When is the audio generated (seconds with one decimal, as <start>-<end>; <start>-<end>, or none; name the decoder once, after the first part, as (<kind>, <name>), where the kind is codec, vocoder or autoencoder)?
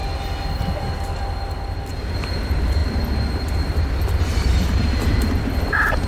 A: 2.1-6.1 (vocoder, BigVGAN v2)